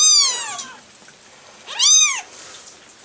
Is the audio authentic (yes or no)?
yes